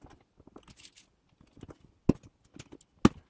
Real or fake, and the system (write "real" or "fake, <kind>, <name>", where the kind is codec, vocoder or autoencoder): real